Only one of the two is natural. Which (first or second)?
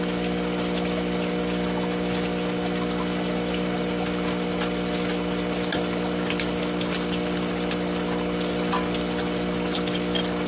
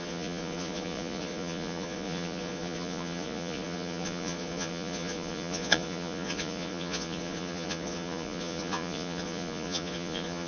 first